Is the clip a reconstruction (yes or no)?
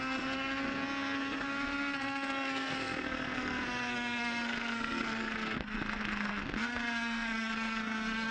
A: yes